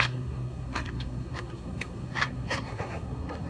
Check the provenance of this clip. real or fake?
fake